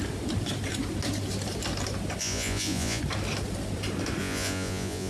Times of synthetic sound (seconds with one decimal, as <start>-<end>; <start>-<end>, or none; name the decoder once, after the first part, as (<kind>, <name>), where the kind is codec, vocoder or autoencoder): 2.2-3.0 (vocoder, Vocos); 4.2-5.1